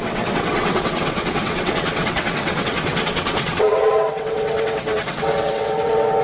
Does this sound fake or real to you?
fake